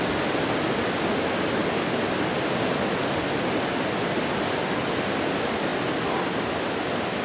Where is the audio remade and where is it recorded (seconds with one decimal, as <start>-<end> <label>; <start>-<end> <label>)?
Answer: 0.0-1.6 recorded; 1.6-2.4 remade; 2.4-7.2 recorded

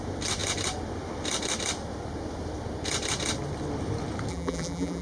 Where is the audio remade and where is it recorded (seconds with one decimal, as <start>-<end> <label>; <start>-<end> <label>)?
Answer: 0.0-4.3 recorded; 4.3-5.0 remade

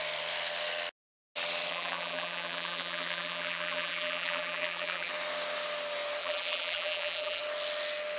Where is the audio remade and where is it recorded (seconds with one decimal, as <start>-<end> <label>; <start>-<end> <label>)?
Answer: 0.0-1.7 recorded; 1.7-5.1 remade; 5.1-6.2 recorded; 6.2-7.4 remade; 7.4-8.2 recorded

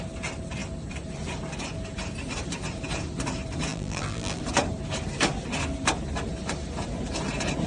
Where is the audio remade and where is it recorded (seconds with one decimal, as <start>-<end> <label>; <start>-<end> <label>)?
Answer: 0.0-3.7 recorded; 3.7-4.4 remade; 4.4-7.7 recorded